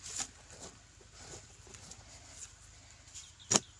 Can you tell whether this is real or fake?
real